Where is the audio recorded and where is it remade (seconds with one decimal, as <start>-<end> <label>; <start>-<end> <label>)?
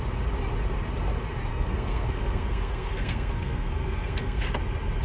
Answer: 0.0-1.5 recorded; 1.5-4.5 remade; 4.5-5.0 recorded